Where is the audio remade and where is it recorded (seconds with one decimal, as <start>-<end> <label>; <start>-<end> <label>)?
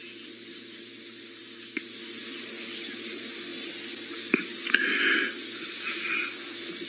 0.0-6.9 recorded